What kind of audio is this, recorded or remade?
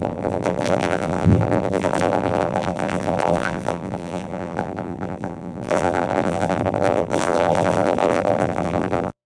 remade